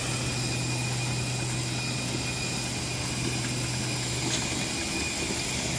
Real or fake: real